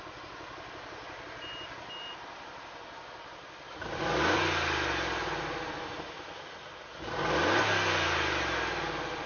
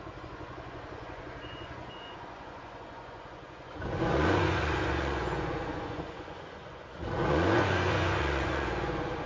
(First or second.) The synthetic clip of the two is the second